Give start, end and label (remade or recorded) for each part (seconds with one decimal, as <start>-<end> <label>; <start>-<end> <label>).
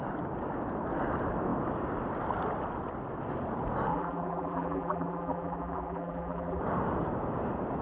0.0-3.9 recorded; 3.9-6.6 remade; 6.6-7.8 recorded